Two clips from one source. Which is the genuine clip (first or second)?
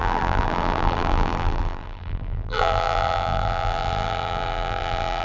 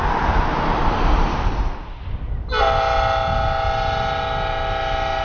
second